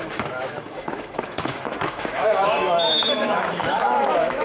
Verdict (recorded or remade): remade